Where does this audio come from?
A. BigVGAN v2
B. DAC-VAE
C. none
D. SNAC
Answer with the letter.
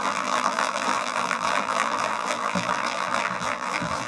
A